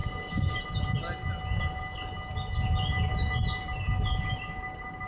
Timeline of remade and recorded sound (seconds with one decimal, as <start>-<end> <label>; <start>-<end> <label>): 0.0-0.6 remade; 0.6-5.1 recorded